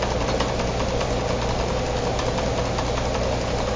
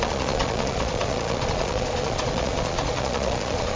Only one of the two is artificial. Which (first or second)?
second